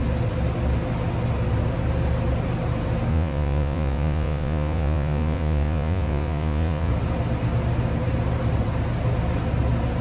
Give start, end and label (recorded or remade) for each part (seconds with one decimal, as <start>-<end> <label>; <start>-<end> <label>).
0.0-3.1 recorded; 3.1-6.9 remade; 6.9-10.0 recorded